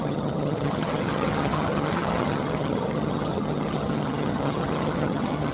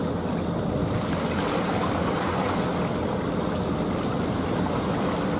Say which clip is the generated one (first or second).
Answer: first